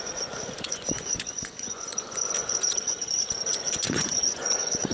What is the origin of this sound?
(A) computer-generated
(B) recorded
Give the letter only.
A